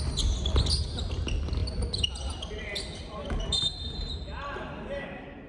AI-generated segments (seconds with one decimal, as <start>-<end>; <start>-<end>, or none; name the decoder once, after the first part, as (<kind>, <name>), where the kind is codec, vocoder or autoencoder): 1.6-3.6 (vocoder, BigVGAN v2)